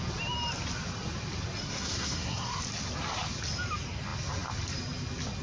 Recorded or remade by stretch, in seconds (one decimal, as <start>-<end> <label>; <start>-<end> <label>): 0.0-1.6 recorded; 1.6-2.6 remade; 2.6-5.4 recorded